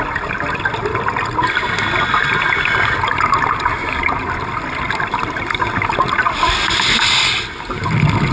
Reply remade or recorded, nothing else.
recorded